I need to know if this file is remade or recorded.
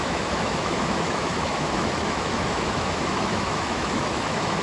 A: remade